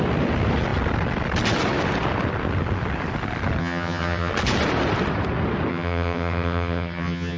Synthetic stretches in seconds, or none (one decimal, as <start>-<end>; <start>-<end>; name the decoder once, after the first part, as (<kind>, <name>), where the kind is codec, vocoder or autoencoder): 3.6-4.3 (vocoder, HiFi-GAN); 5.7-7.4